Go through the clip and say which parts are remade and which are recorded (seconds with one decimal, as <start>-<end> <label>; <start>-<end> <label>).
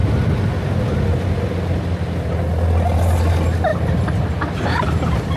0.0-5.4 recorded